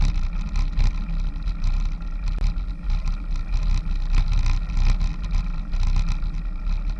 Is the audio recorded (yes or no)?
yes